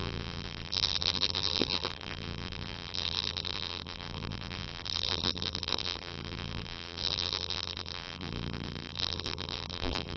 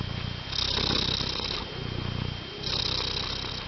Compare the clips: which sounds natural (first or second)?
second